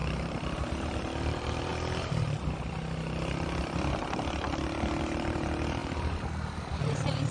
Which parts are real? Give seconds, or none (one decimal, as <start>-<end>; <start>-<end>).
1.7-5.0